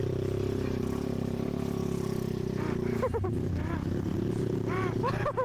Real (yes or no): yes